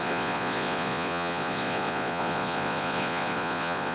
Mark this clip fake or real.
fake